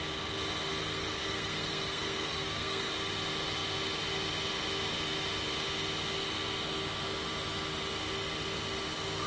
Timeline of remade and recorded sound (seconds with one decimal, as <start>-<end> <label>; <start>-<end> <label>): 0.0-0.8 recorded; 0.8-2.9 remade; 2.9-9.3 recorded